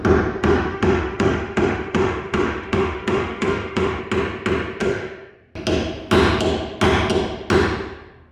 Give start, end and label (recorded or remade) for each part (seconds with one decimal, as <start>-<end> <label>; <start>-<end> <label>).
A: 0.0-0.4 recorded; 0.4-4.0 remade; 4.0-4.8 recorded; 4.8-5.3 remade; 5.3-8.3 recorded